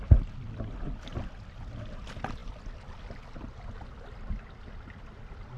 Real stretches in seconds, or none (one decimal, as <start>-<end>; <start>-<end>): 0.0-5.6